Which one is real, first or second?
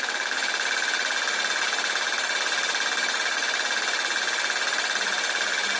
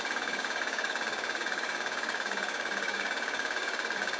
first